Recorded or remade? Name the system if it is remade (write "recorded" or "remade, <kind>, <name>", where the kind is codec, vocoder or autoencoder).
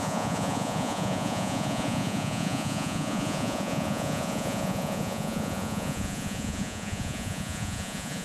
remade, vocoder, Vocos